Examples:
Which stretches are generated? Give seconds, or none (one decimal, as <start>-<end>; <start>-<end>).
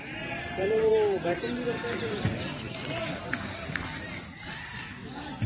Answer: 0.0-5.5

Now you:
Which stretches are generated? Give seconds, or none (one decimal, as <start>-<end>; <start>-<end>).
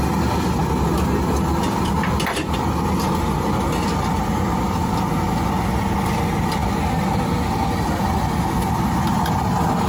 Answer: none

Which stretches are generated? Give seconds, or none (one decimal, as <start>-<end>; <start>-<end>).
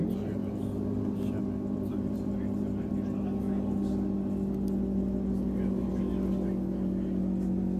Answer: 1.9-2.9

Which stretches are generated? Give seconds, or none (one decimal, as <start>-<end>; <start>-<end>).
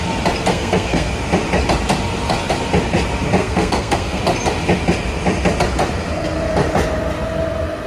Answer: 0.5-1.1; 3.4-4.2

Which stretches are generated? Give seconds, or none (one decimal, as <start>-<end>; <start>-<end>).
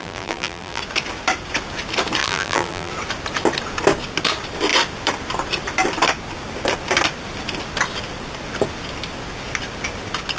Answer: 0.0-0.8; 2.2-2.9